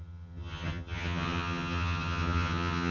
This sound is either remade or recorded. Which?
remade